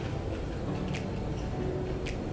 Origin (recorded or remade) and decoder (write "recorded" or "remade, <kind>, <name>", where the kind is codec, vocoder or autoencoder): recorded